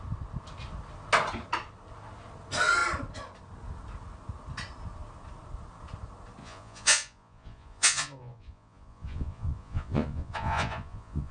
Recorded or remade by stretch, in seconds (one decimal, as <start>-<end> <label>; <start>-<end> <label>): 0.0-6.4 recorded; 6.4-11.3 remade